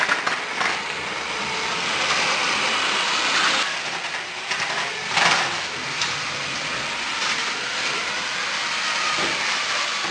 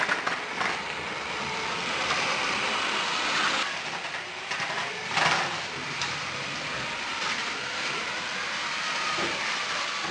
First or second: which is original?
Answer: first